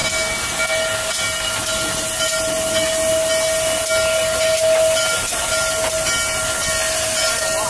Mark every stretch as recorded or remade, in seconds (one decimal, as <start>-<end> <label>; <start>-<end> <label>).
0.0-7.7 recorded

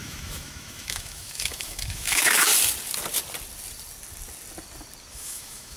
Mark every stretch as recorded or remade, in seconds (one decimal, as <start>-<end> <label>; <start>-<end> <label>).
0.0-2.5 remade; 2.5-5.1 recorded; 5.1-5.8 remade

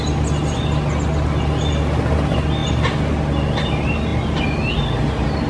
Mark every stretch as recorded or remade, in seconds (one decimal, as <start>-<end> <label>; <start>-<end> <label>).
0.0-5.5 recorded

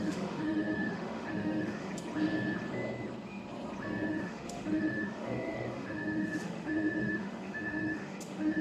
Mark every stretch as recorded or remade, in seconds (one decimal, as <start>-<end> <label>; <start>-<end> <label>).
0.0-1.9 remade; 1.9-4.1 recorded; 4.1-8.6 remade

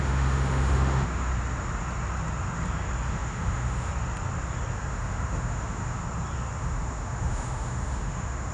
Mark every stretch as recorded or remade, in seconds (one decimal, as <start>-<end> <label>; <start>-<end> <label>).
0.0-1.3 remade; 1.3-3.1 recorded; 3.1-3.9 remade; 3.9-4.9 recorded; 4.9-6.0 remade; 6.0-6.6 recorded; 6.6-8.5 remade

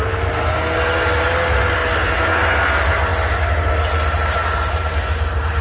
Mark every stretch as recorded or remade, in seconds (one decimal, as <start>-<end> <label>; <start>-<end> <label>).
0.0-5.6 recorded

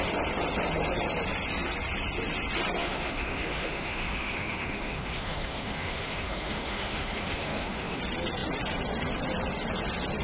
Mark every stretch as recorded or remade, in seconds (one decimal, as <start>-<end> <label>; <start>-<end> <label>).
0.0-2.8 recorded; 2.8-8.0 remade; 8.0-10.2 recorded

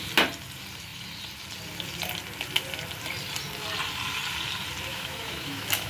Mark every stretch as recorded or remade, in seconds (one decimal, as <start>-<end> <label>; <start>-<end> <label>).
0.0-4.9 recorded; 4.9-5.9 remade